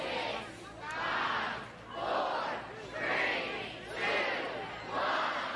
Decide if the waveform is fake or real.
real